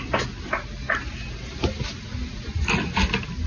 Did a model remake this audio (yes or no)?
no